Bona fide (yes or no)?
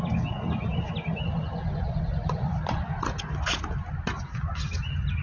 yes